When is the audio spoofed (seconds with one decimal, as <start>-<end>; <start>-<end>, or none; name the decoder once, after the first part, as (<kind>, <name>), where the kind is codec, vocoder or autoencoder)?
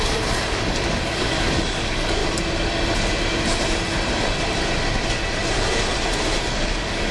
0.0-2.2 (codec, DAC); 6.4-7.1